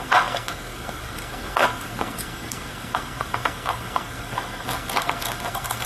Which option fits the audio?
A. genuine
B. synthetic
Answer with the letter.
B